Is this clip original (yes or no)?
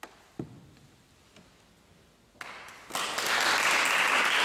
yes